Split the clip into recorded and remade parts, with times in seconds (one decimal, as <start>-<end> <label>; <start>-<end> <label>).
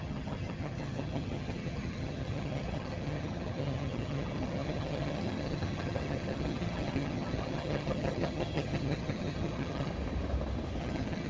0.0-9.9 remade; 9.9-10.8 recorded; 10.8-11.3 remade